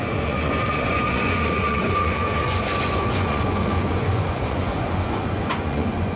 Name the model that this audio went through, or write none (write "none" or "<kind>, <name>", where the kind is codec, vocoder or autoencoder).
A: vocoder, Vocos